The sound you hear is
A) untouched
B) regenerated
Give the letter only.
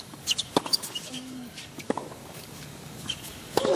B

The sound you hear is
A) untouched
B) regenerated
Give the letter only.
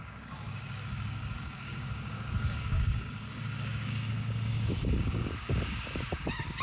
B